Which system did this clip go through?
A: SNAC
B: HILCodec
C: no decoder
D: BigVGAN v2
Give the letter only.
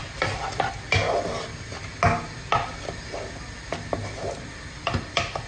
C